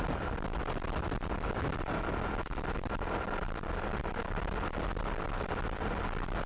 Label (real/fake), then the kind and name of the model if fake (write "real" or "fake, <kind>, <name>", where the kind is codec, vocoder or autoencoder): real